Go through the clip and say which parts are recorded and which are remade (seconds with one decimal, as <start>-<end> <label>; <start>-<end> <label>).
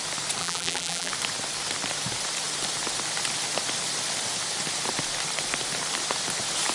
0.0-0.4 recorded; 0.4-1.1 remade; 1.1-6.7 recorded